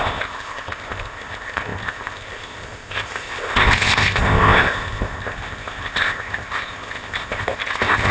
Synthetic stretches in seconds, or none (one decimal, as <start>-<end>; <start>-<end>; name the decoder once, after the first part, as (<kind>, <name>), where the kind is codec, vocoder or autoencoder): 0.0-8.1 (codec, ZipCodec)